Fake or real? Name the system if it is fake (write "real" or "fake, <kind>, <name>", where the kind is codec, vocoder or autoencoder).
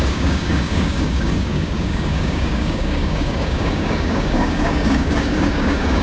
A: fake, codec, DAC